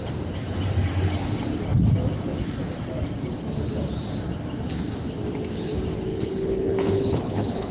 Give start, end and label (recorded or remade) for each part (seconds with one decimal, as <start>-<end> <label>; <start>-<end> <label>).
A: 0.0-6.1 recorded; 6.1-7.7 remade